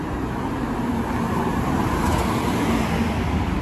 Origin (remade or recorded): recorded